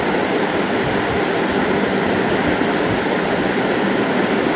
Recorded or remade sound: recorded